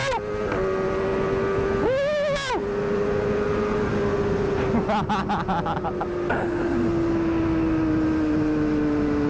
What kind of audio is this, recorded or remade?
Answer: recorded